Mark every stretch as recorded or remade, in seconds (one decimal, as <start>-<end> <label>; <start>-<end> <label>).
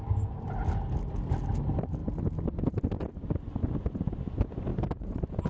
0.0-4.7 recorded; 4.7-5.5 remade